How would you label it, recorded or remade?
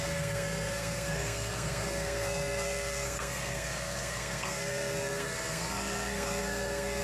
remade